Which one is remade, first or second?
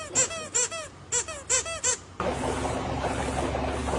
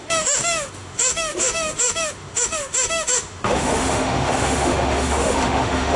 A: second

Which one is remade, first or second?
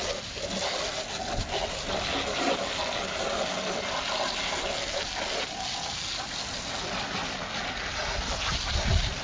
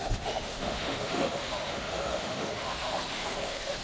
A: second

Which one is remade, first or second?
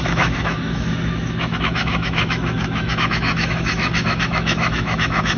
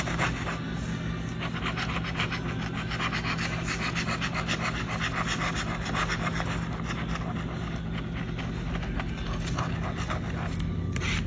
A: first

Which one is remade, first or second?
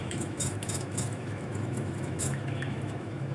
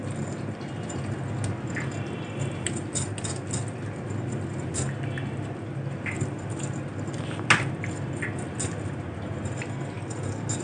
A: first